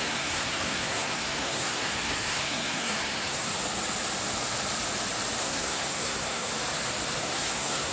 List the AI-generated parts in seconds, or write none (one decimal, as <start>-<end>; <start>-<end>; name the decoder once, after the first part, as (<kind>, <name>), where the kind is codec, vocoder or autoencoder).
0.0-3.5 (codec, SNAC); 5.4-6.5; 7.2-7.9